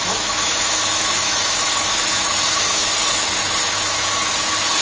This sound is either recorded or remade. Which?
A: remade